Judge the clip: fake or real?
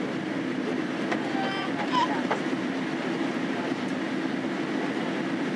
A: real